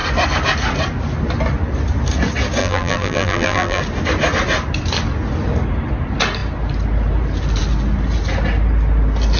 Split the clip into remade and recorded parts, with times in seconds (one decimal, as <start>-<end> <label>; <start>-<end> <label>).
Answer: 0.0-2.6 recorded; 2.6-3.8 remade; 3.8-9.4 recorded